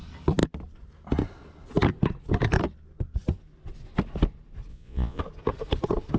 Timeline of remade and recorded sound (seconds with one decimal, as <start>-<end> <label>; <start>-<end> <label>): 0.0-4.7 recorded; 4.7-5.2 remade; 5.2-6.2 recorded